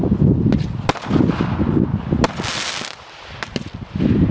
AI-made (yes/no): no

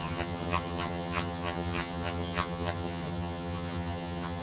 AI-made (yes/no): yes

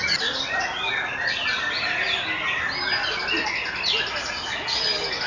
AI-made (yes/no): no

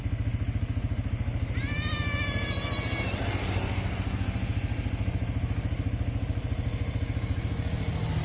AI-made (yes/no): no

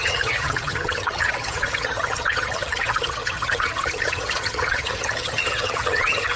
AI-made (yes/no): yes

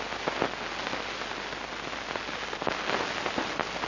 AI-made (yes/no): no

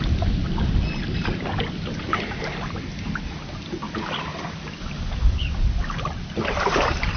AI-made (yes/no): no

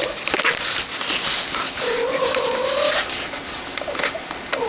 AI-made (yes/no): no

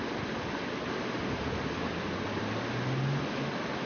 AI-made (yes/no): no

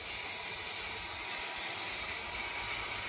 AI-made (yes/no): no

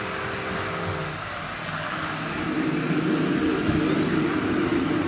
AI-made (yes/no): no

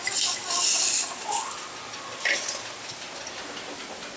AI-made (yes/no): no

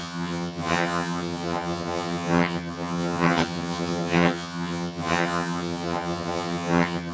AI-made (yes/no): yes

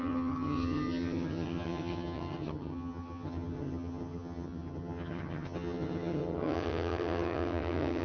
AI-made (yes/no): yes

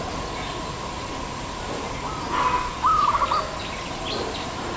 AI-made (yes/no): no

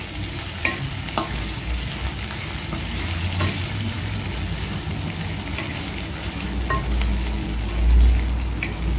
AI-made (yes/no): no